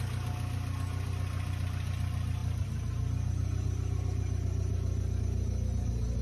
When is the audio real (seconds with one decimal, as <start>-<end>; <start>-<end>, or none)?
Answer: 0.0-6.2

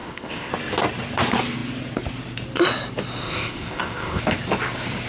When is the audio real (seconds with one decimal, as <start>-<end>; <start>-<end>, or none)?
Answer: 0.5-3.2; 4.2-5.1

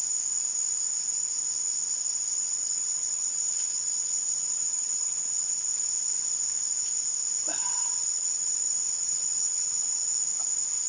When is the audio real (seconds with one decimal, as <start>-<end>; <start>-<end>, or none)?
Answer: 0.0-2.4; 5.6-7.6; 10.1-10.9

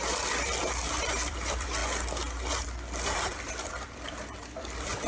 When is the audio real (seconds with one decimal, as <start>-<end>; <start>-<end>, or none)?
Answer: 1.8-2.5